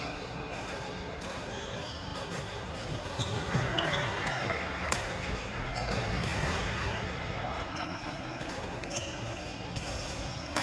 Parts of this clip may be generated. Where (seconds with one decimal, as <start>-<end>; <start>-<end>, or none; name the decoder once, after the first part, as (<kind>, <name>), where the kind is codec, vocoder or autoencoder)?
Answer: 0.0-10.6 (codec, SNAC)